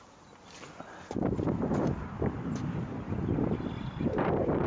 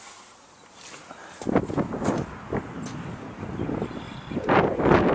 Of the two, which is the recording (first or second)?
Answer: second